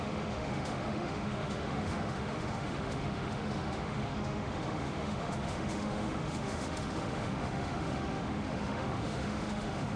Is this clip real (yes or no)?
no